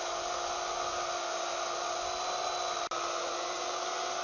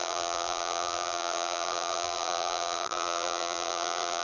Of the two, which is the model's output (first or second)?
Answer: second